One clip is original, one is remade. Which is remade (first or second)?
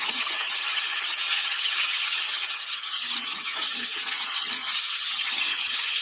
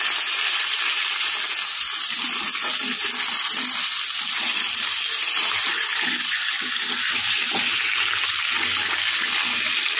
first